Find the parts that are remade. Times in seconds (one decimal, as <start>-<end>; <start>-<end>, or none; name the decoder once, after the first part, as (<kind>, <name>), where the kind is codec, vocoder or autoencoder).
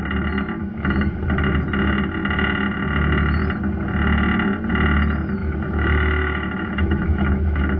0.6-1.2 (autoencoder, DAC-VAE); 5.4-7.8